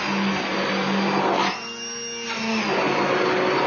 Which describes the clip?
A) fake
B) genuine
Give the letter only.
B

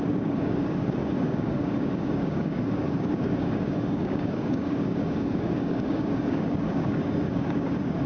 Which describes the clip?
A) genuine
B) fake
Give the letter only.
B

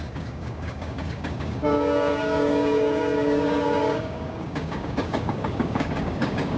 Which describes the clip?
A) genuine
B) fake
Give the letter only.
B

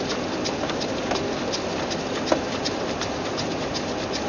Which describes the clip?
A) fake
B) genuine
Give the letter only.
B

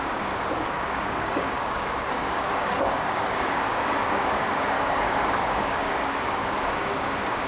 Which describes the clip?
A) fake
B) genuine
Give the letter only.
A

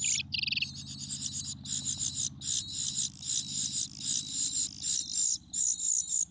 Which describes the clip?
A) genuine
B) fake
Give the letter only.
A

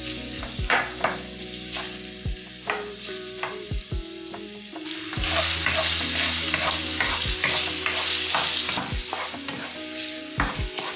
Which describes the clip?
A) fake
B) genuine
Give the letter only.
B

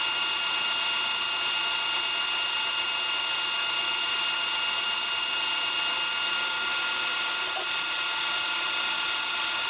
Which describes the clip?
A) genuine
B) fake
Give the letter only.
A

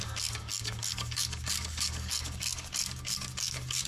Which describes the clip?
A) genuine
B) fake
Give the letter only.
B